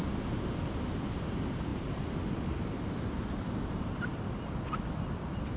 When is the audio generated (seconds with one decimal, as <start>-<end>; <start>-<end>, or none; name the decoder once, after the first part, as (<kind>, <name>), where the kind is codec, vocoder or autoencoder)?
none